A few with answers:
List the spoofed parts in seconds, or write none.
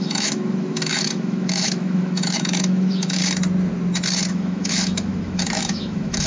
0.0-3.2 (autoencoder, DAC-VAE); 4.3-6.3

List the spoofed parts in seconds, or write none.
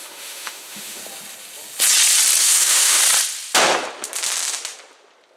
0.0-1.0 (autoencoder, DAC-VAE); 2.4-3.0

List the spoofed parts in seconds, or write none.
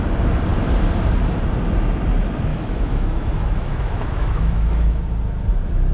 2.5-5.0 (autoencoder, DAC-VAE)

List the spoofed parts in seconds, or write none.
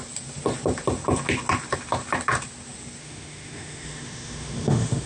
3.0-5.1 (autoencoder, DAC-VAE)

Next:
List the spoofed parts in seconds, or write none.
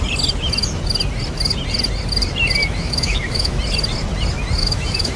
2.6-3.6 (autoencoder, DAC-VAE); 4.6-5.2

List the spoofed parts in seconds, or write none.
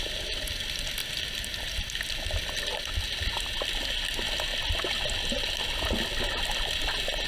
none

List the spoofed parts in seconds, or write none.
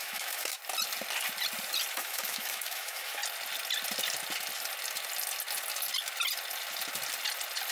0.0-0.6 (autoencoder, DAC-VAE); 1.9-3.2